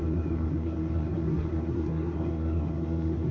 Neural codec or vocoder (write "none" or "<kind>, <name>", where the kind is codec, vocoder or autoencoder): codec, SNAC